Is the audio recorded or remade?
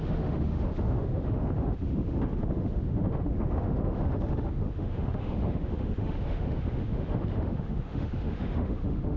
remade